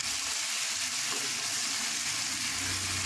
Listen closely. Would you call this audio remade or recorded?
recorded